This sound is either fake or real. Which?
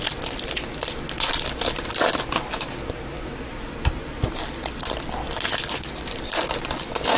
fake